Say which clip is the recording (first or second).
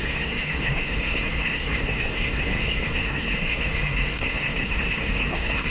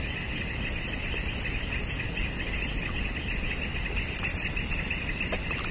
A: second